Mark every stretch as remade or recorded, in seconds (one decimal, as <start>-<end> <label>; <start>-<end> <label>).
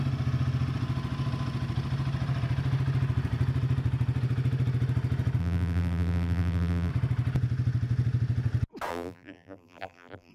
0.0-5.4 recorded; 5.4-6.9 remade; 6.9-8.9 recorded; 8.9-10.3 remade